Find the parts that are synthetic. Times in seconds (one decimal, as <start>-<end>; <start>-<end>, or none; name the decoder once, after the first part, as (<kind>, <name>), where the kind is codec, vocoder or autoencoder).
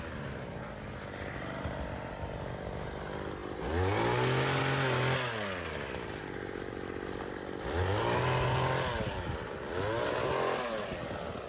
none